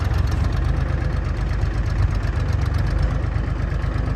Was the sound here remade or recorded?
recorded